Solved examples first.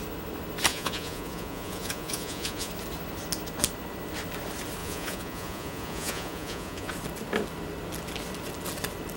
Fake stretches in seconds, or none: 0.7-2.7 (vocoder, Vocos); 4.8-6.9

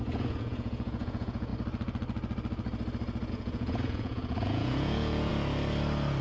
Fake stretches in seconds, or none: 0.0-1.5 (vocoder, Vocos); 3.3-5.3

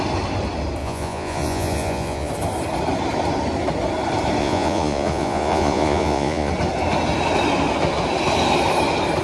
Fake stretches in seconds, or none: 0.8-2.3 (vocoder, Vocos); 4.4-6.5